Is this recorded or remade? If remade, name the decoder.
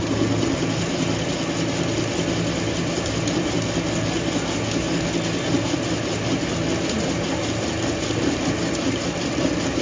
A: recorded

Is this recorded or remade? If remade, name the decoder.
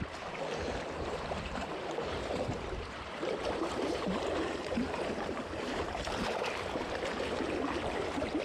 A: remade, vocoder, BigVGAN v2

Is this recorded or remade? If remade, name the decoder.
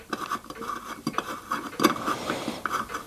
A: remade, vocoder, BigVGAN v2